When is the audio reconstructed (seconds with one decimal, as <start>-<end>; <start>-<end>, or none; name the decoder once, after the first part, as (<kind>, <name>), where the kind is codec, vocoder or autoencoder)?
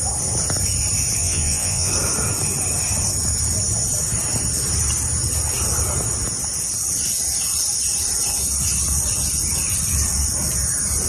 1.2-1.9 (vocoder, Vocos)